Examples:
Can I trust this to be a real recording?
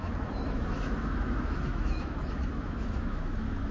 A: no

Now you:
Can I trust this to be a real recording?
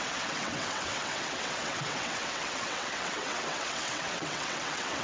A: no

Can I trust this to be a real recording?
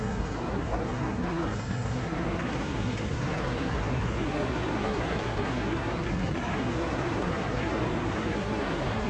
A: no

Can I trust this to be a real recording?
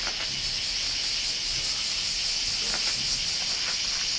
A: yes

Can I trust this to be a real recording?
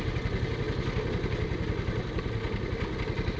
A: yes